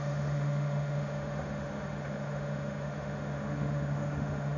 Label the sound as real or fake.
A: fake